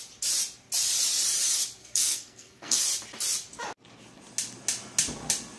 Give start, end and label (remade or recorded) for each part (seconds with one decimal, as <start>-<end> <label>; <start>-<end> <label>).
0.0-1.8 recorded; 1.8-2.8 remade; 2.8-5.6 recorded